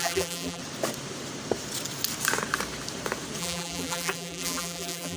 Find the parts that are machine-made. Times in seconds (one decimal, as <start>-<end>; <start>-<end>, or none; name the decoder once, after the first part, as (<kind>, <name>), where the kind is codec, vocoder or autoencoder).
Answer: 0.0-0.6 (vocoder, BigVGAN v2); 3.4-5.2